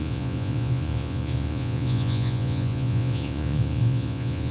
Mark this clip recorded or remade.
remade